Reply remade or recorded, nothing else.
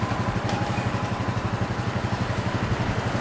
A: recorded